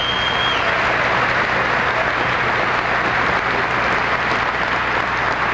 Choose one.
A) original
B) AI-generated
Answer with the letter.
A